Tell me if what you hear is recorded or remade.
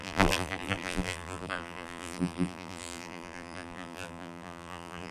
remade